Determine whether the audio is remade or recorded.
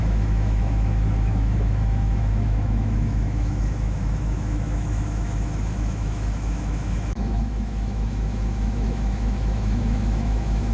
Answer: remade